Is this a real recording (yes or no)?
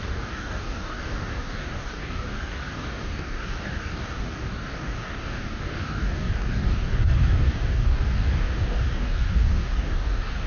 no